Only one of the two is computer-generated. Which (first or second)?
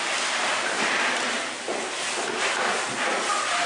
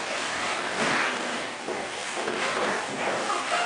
second